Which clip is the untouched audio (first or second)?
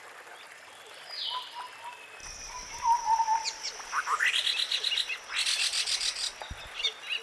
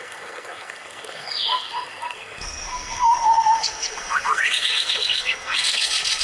first